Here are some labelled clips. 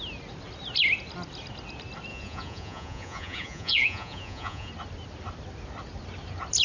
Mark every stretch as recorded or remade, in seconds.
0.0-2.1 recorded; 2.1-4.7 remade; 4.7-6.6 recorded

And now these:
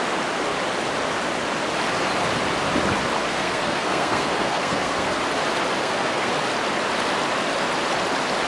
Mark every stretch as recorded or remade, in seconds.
0.0-3.3 recorded; 3.3-5.2 remade; 5.2-5.8 recorded; 5.8-6.3 remade; 6.3-8.5 recorded

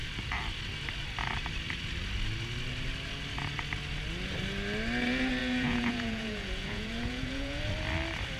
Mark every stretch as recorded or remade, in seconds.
0.0-5.4 recorded; 5.4-7.6 remade; 7.6-8.4 recorded

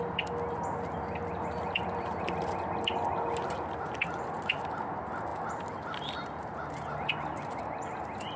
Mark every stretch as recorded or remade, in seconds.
0.0-8.4 recorded